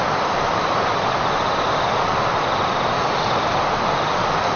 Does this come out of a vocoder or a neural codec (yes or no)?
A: no